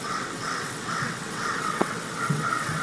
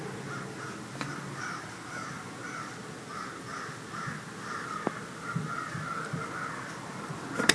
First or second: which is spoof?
first